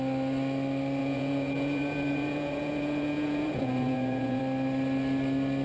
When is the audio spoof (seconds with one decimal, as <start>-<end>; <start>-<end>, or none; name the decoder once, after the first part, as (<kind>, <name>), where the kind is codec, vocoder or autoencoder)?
1.0-4.4 (vocoder, Vocos)